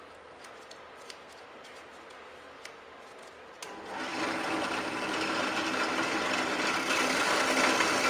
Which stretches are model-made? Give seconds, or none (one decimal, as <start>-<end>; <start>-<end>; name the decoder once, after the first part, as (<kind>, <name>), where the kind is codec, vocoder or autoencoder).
none